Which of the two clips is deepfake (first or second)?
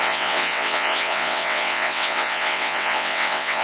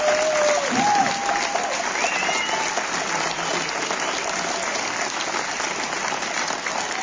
first